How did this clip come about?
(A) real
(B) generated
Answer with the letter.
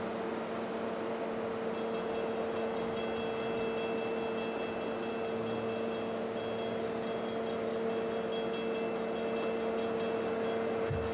A